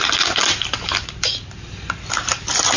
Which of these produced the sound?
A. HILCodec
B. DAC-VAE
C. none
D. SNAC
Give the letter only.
C